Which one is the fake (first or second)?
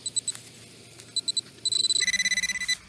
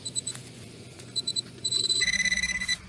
second